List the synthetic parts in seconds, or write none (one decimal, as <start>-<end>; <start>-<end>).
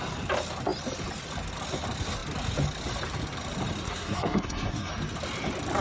3.8-4.9